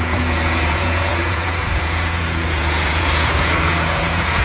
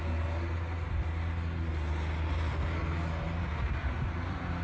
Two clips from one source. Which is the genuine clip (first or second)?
second